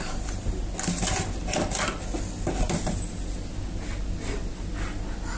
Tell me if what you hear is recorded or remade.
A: recorded